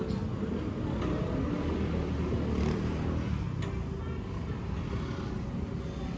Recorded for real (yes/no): yes